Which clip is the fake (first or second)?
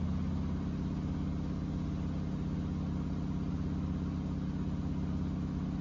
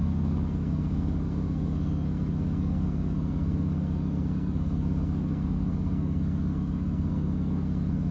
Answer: second